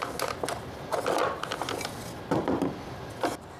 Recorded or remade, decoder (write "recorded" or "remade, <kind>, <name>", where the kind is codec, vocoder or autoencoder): recorded